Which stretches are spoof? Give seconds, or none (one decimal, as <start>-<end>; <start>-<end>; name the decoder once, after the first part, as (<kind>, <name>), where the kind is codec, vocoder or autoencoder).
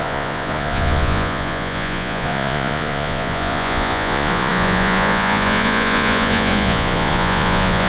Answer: 0.0-7.9 (vocoder, Vocos)